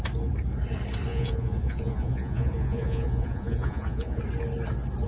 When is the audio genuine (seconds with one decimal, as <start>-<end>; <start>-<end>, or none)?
0.0-1.1; 4.2-5.1